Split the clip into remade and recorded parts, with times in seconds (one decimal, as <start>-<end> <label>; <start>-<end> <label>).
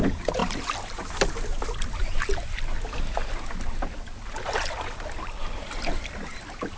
0.0-6.8 recorded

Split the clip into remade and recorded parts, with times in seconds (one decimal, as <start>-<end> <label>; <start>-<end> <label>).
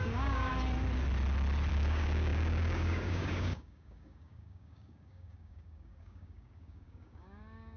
0.0-0.5 remade; 0.5-1.7 recorded; 1.7-7.8 remade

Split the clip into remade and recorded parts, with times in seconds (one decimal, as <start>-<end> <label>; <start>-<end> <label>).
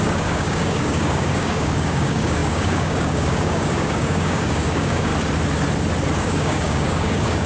0.0-5.1 remade; 5.1-6.2 recorded; 6.2-7.5 remade